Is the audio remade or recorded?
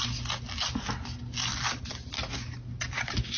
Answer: recorded